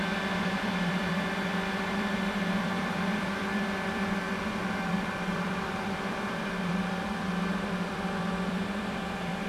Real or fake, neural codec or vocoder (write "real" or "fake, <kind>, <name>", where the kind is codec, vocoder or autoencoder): fake, vocoder, BigVGAN v2